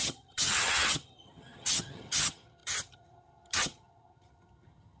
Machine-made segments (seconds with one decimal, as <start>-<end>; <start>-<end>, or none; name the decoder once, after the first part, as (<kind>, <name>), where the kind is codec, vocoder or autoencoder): 0.0-5.0 (vocoder, HiFi-GAN)